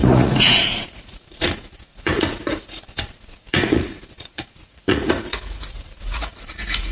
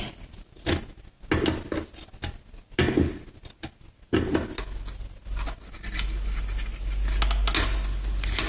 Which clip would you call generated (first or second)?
first